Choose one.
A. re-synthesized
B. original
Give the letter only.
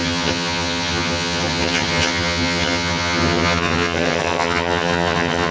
A